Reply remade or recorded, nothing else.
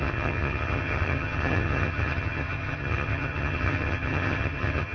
remade